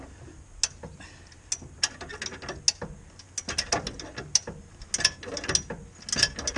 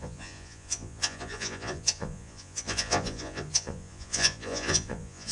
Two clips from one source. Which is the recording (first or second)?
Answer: first